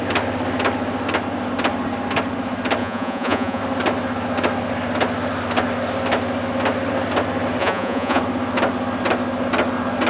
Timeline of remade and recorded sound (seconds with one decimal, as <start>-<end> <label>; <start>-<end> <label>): 0.0-2.8 recorded; 2.8-3.6 remade; 3.6-7.6 recorded; 7.6-8.2 remade; 8.2-10.1 recorded